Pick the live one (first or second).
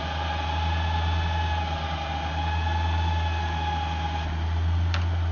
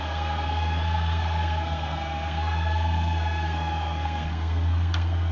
first